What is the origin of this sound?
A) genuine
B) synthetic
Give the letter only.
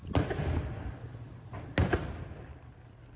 A